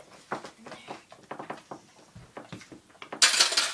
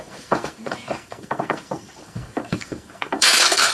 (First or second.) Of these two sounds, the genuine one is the first